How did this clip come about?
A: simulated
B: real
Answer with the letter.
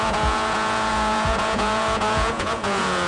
A